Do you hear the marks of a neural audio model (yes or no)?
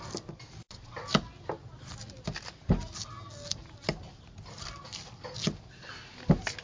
no